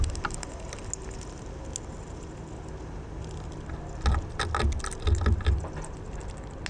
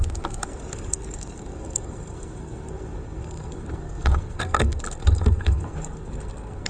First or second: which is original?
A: first